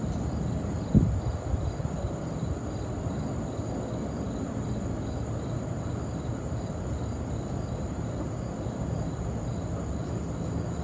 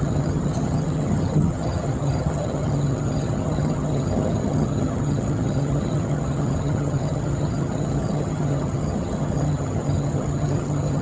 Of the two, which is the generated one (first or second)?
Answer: second